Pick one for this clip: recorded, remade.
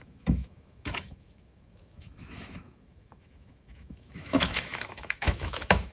remade